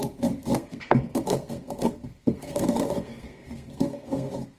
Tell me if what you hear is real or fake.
fake